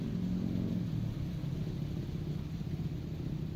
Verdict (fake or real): real